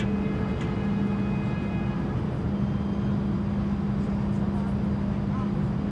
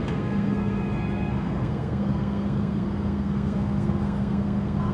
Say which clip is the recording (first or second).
first